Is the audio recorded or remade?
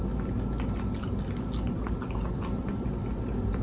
recorded